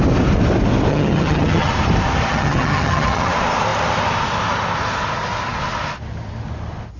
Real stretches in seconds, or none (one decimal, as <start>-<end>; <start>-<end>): 0.0-0.9; 1.7-2.3; 3.3-7.0